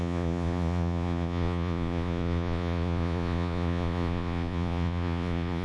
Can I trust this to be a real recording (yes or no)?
no